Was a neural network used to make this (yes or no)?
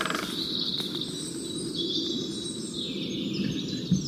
no